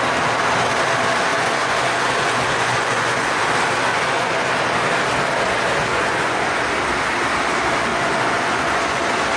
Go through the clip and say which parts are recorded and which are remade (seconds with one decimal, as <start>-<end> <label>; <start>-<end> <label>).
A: 0.0-1.3 recorded; 1.3-3.4 remade; 3.4-3.9 recorded; 3.9-4.5 remade; 4.5-5.9 recorded; 5.9-6.6 remade; 6.6-7.9 recorded; 7.9-9.0 remade; 9.0-9.4 recorded

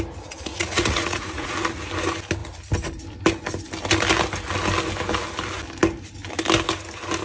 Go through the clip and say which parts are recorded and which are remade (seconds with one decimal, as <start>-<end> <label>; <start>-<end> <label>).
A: 0.0-0.5 recorded; 0.5-1.5 remade; 1.5-7.2 recorded

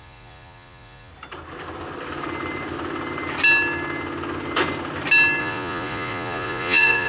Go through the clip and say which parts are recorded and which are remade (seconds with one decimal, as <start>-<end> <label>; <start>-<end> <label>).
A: 0.0-1.1 remade; 1.1-5.4 recorded; 5.4-7.1 remade

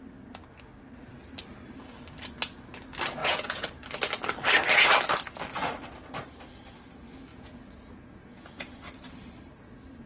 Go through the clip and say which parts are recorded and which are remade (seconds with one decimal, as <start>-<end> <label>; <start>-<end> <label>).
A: 0.0-3.2 recorded; 3.2-3.8 remade; 3.8-7.3 recorded; 7.3-8.7 remade; 8.7-10.1 recorded

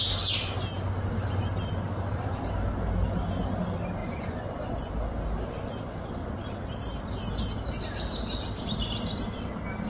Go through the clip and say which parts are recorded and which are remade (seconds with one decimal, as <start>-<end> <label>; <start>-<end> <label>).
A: 0.0-4.0 recorded; 4.0-4.9 remade; 4.9-9.9 recorded

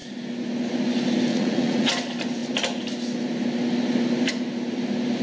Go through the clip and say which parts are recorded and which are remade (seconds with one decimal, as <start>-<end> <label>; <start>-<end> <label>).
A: 0.0-1.3 recorded; 1.3-1.9 remade; 1.9-5.2 recorded